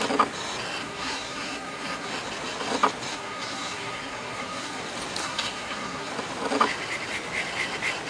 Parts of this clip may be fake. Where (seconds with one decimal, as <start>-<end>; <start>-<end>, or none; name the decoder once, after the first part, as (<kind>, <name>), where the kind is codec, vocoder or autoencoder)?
0.8-2.1 (codec, SNAC); 3.1-4.8; 5.2-6.1